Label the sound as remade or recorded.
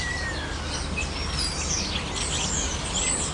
recorded